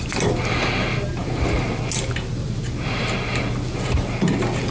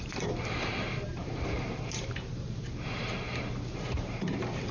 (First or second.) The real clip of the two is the first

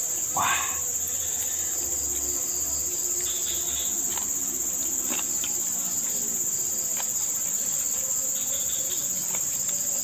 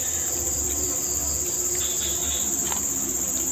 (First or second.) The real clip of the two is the first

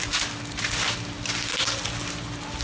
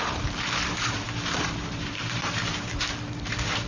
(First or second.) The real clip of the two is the first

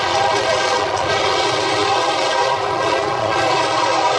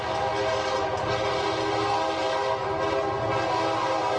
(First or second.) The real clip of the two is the second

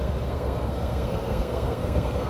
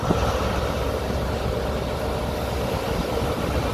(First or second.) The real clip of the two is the second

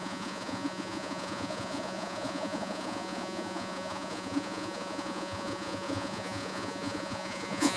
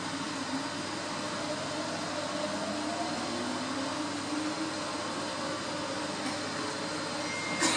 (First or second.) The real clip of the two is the second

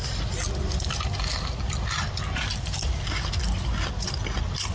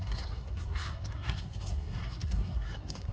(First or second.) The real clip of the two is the first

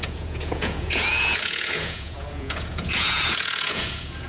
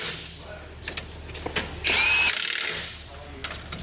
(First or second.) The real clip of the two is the second